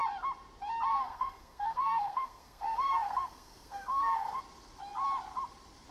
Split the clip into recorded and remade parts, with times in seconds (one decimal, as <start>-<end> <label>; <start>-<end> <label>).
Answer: 0.0-0.9 recorded; 0.9-4.4 remade; 4.4-5.9 recorded